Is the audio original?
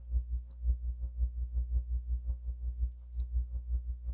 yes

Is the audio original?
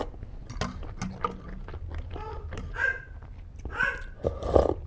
yes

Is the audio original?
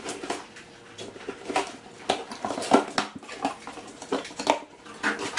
yes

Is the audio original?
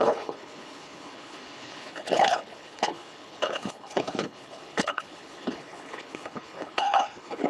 no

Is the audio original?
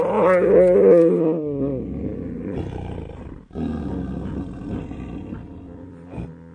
yes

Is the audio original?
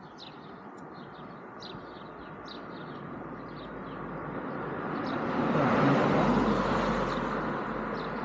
yes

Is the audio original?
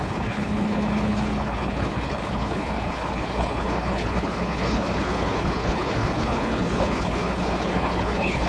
no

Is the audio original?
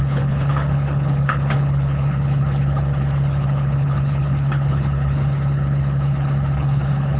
no